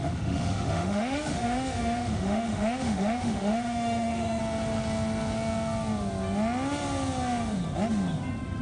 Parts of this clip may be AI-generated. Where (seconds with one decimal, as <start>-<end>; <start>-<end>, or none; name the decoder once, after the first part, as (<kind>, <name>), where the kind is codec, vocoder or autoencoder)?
0.0-4.4 (autoencoder, DAC-VAE)